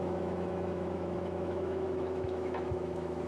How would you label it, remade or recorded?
remade